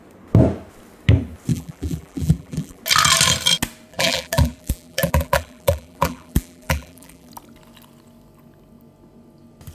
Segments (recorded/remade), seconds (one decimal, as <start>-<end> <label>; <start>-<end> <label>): 0.0-1.5 recorded; 1.5-2.8 remade; 2.8-3.9 recorded; 3.9-7.3 remade; 7.3-9.7 recorded